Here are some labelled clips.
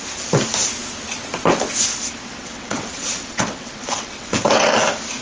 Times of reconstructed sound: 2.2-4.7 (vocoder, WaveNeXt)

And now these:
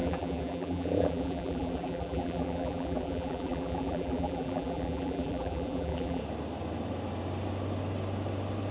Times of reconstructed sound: 0.0-6.2 (vocoder, BigVGAN v2)

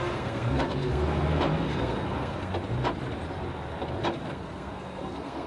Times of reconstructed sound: 0.0-2.5 (codec, SNAC); 4.3-5.5